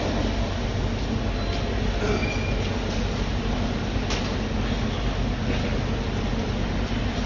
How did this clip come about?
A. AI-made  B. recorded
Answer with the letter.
B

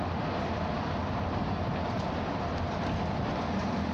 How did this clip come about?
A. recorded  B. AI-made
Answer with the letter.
A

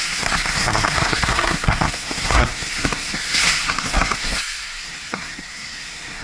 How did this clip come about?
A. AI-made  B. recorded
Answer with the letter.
A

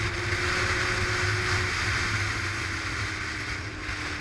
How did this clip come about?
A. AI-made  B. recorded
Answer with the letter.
B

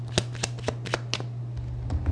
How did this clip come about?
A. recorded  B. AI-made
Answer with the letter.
A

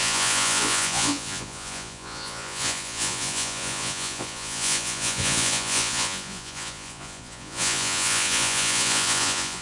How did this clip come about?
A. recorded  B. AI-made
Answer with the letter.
B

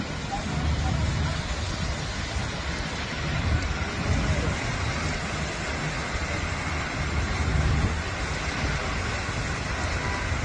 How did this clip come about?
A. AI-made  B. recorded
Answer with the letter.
B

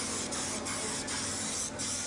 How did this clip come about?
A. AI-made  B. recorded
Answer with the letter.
B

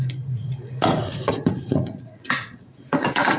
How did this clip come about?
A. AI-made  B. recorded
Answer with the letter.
A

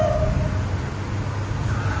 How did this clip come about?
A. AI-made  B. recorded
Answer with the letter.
B